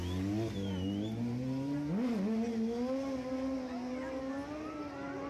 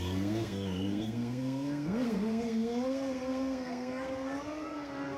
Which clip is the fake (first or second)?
second